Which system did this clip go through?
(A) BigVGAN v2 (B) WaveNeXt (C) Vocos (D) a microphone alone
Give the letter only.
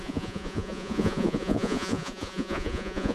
C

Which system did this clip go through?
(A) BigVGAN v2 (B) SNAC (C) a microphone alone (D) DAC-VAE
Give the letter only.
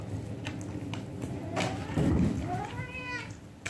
C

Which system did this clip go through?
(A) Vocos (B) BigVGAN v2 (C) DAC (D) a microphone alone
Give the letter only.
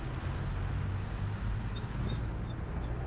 D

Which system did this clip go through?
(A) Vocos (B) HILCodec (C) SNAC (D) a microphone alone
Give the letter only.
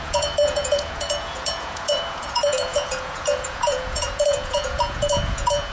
A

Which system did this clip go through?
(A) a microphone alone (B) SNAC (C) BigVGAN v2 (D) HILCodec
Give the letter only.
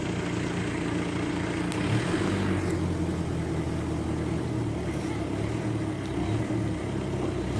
A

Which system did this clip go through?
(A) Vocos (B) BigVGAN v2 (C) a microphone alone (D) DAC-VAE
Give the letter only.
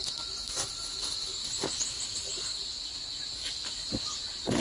C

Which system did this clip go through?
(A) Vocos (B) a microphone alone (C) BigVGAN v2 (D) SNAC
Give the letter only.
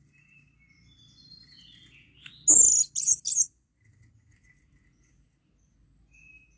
B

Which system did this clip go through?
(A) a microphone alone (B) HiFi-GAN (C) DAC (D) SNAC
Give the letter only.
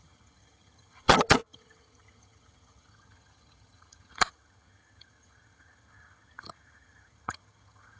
B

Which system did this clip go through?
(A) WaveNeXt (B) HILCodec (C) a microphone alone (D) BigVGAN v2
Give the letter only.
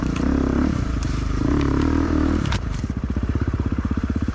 D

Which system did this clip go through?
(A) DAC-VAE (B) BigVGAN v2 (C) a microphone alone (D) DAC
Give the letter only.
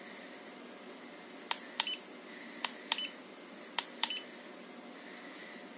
C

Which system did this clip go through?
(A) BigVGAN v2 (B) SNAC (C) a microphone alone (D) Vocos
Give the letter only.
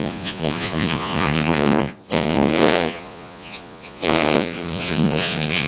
D